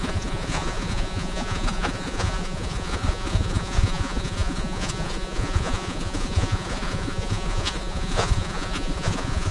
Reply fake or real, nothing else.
fake